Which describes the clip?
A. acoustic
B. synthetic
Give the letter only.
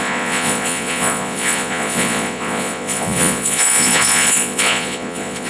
B